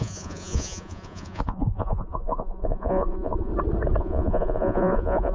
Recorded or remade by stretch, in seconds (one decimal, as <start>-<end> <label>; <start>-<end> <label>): 0.0-3.5 remade; 3.5-4.0 recorded; 4.0-5.3 remade